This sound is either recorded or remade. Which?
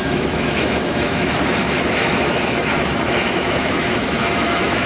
remade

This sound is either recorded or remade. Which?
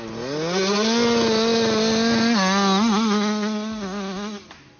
recorded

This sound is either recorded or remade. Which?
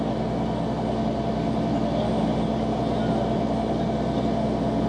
recorded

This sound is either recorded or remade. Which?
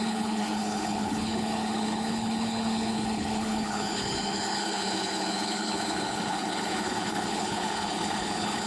remade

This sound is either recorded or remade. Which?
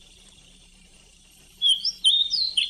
remade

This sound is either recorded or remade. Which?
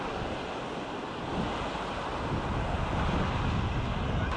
recorded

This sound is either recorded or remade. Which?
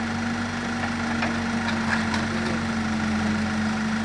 recorded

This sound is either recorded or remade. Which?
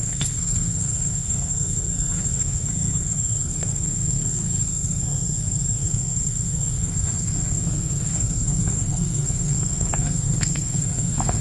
remade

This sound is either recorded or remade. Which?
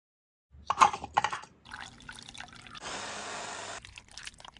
recorded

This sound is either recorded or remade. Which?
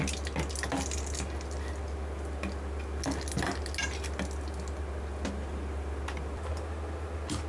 recorded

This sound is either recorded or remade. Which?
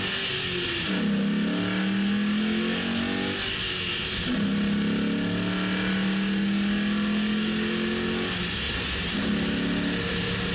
recorded